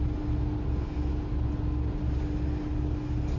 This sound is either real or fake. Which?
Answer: real